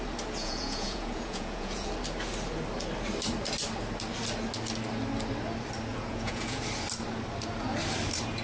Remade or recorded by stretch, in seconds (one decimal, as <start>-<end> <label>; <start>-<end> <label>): 0.0-0.4 recorded; 0.4-1.9 remade; 1.9-5.9 recorded; 5.9-6.6 remade; 6.6-8.4 recorded